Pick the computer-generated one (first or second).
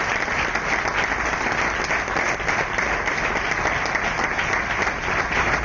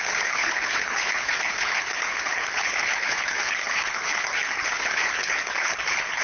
second